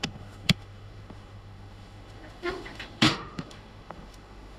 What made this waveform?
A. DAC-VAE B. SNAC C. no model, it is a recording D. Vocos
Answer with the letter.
A